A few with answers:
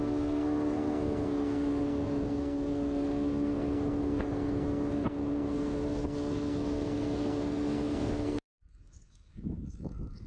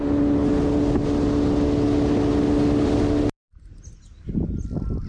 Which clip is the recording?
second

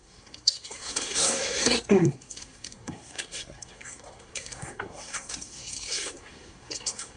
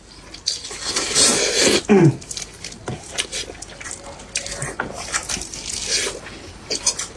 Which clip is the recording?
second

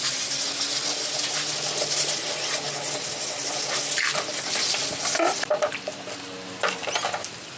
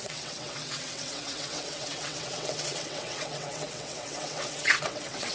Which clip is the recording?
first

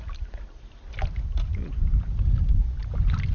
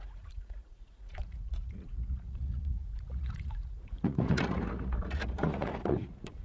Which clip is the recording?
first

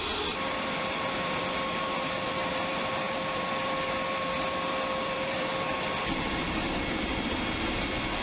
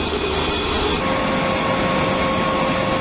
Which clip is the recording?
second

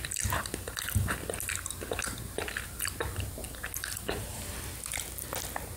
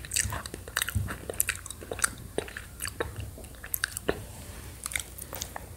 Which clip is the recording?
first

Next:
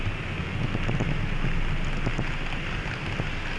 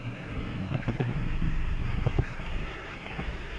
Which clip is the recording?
first